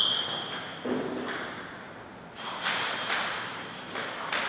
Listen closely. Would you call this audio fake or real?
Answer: real